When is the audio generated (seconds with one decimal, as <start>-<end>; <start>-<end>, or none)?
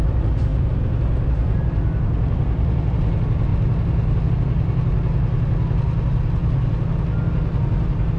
none